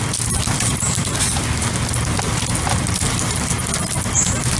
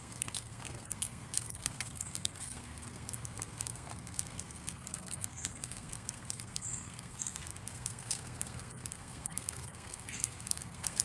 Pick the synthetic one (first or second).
second